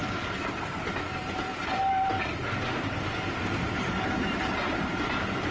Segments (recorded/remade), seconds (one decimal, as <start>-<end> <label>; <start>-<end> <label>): 0.0-0.9 remade; 0.9-1.5 recorded; 1.5-4.8 remade; 4.8-5.5 recorded